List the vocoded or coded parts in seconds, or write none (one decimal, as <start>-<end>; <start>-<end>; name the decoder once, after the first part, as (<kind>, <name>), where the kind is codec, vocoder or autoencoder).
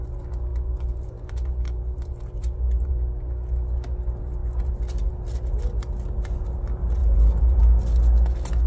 0.5-2.9 (vocoder, BigVGAN v2); 7.0-7.6